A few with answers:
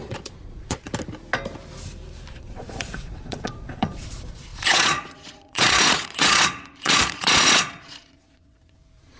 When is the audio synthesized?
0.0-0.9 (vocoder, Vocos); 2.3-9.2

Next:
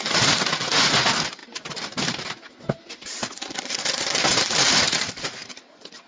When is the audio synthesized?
1.4-5.1 (vocoder, BigVGAN v2)

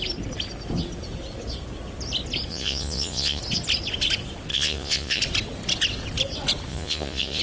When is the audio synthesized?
2.5-3.4 (vocoder, Vocos); 4.5-5.2; 6.7-7.4

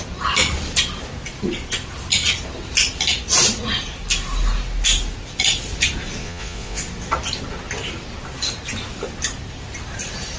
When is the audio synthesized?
6.2-6.8 (vocoder, Vocos)

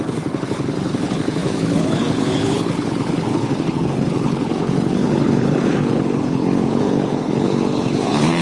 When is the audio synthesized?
0.0-8.4 (codec, HILCodec)

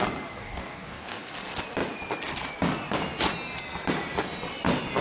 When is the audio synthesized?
0.4-1.3 (codec, DAC)

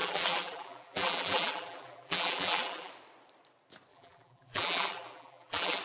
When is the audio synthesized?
0.0-2.9 (vocoder, BigVGAN v2); 3.9-5.8

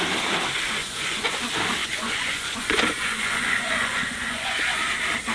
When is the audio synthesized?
0.8-1.4 (vocoder, Vocos); 1.8-4.8